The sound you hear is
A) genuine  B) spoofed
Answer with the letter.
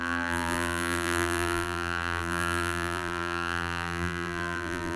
B